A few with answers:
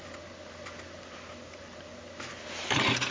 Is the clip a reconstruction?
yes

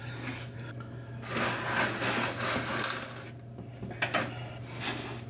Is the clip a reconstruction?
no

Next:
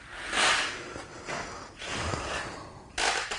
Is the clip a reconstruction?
no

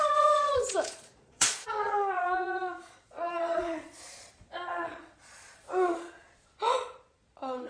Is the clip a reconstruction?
yes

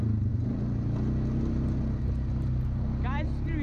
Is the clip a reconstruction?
no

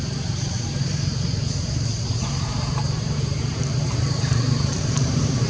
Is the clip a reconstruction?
yes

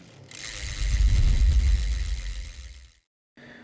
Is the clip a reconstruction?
no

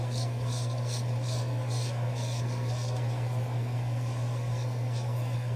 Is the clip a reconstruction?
yes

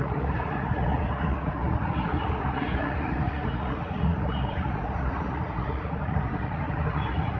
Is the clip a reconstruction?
yes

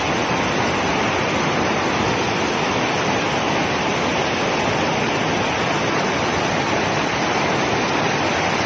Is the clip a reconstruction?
no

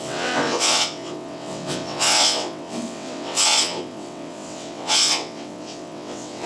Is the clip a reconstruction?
yes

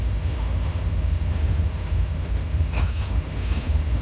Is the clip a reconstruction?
yes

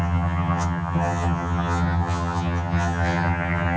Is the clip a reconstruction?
yes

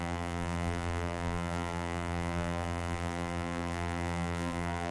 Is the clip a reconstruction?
yes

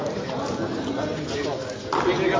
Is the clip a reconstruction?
no